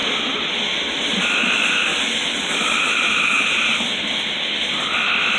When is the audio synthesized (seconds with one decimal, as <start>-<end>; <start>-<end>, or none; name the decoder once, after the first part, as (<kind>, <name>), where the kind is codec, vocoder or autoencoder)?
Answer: none